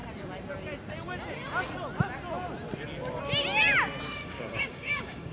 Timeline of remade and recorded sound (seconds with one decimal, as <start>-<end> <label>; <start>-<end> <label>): 0.0-4.1 recorded; 4.1-5.3 remade